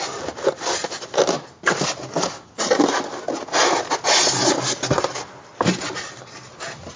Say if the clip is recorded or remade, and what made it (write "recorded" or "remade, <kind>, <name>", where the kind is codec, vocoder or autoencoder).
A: recorded